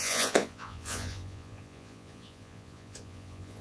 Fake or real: fake